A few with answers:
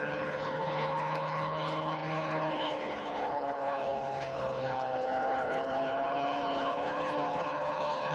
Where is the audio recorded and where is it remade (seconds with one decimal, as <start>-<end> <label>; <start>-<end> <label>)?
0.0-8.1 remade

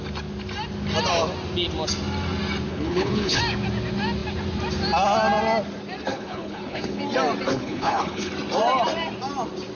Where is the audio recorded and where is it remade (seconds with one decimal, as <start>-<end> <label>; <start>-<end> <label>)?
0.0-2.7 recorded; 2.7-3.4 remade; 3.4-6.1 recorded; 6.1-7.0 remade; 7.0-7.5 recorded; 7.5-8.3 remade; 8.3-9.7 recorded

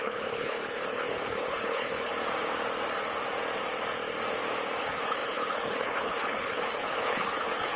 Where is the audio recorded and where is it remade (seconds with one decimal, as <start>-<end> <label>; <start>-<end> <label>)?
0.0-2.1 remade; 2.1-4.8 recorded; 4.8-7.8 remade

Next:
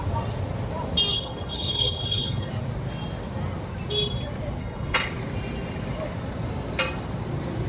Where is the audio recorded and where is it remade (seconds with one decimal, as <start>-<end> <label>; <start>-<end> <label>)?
0.0-1.1 recorded; 1.1-2.5 remade; 2.5-4.6 recorded; 4.6-5.1 remade; 5.1-7.7 recorded

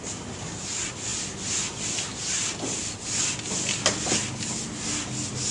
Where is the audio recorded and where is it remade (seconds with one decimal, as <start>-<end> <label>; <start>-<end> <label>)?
0.0-5.5 recorded

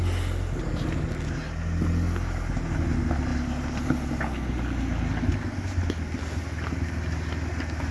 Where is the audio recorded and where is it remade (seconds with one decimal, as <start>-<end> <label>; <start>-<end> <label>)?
0.0-7.9 recorded